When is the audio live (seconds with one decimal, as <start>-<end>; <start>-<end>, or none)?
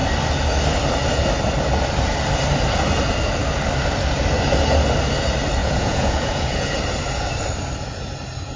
0.0-5.6; 6.8-8.6